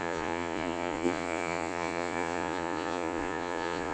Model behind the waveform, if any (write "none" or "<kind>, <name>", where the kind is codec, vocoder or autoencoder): vocoder, Vocos